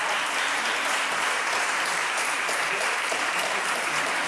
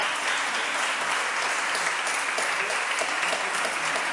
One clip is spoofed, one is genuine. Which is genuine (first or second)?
second